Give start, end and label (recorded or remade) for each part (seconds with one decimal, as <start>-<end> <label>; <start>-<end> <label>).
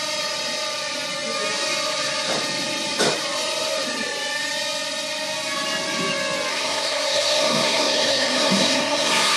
0.0-6.5 recorded; 6.5-9.4 remade